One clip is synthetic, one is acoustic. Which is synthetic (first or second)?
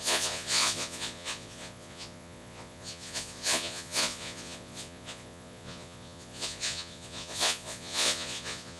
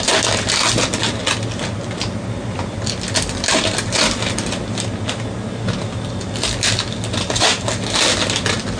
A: first